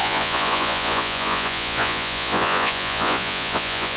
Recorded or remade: remade